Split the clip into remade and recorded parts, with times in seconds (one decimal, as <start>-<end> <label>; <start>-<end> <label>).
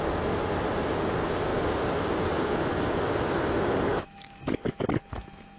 0.0-3.9 recorded; 3.9-4.5 remade; 4.5-5.6 recorded